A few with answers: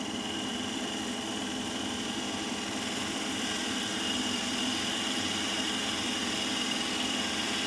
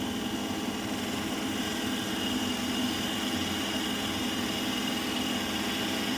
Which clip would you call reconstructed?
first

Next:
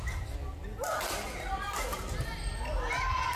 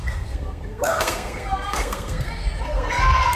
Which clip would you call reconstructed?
second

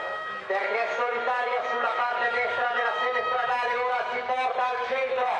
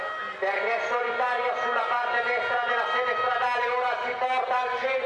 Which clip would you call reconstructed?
first